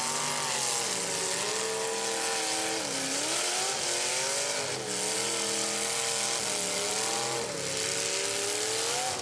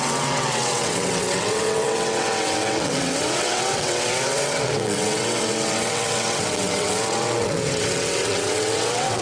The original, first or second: first